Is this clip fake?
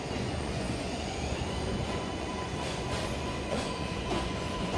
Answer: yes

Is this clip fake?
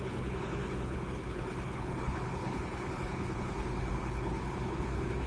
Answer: yes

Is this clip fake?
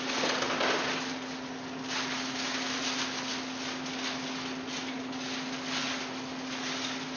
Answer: no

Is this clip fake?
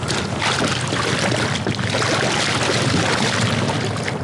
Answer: no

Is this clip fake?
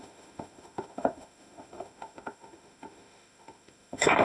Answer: yes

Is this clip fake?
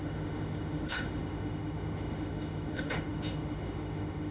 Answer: yes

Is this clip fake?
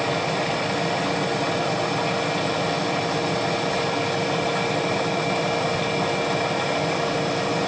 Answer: no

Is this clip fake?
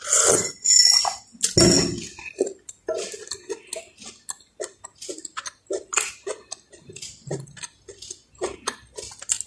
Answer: no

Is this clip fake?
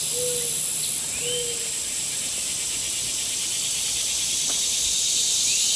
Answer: no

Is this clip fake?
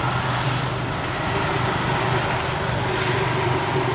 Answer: no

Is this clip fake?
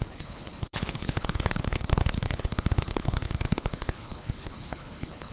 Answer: yes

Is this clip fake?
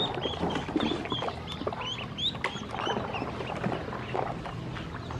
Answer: no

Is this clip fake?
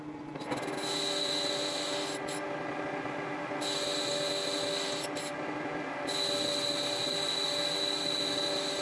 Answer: no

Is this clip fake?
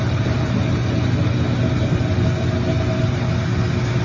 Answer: no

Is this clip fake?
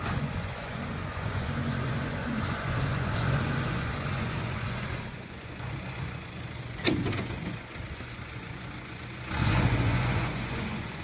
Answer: yes